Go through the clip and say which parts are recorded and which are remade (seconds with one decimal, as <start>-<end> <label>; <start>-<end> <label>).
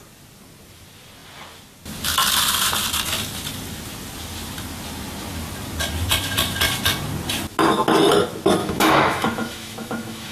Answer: 0.0-8.6 recorded; 8.6-10.3 remade